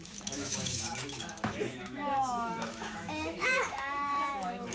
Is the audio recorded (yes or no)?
no